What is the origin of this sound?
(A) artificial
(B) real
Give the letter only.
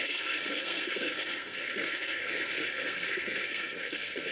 A